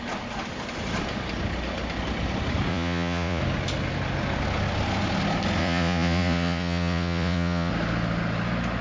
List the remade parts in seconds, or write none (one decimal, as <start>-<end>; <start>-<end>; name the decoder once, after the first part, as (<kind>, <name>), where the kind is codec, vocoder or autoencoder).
2.7-3.4 (vocoder, Vocos); 5.6-7.7

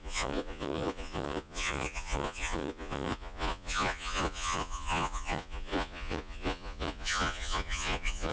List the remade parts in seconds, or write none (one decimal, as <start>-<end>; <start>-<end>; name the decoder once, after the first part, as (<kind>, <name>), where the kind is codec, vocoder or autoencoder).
0.0-8.3 (vocoder, Vocos)

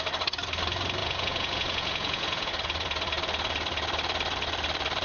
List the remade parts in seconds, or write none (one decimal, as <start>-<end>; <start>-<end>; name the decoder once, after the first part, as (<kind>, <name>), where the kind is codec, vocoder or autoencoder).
1.0-2.5 (vocoder, Vocos)

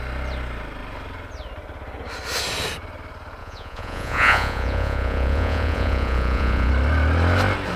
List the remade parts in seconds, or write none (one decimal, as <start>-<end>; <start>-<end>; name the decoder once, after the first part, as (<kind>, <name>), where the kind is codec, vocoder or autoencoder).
3.4-6.7 (vocoder, Vocos)

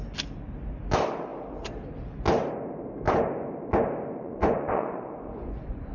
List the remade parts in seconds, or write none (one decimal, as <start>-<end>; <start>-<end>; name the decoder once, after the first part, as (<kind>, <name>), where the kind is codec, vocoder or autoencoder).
4.2-5.9 (vocoder, Vocos)

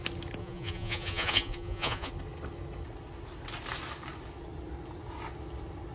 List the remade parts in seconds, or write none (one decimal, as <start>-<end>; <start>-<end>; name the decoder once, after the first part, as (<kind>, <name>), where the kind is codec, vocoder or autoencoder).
0.4-2.1 (vocoder, Vocos)

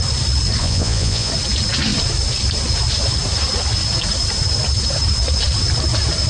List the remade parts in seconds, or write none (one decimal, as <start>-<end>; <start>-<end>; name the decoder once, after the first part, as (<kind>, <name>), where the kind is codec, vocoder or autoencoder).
0.6-1.3 (vocoder, Vocos)